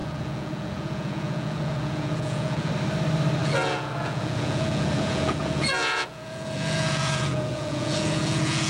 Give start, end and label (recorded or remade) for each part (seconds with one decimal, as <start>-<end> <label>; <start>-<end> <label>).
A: 0.0-2.7 remade; 2.7-3.4 recorded; 3.4-8.7 remade